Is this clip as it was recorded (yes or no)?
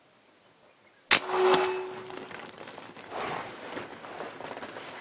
yes